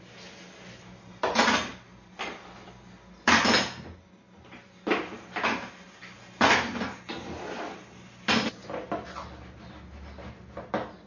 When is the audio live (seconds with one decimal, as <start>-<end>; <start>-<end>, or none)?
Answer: 0.0-11.1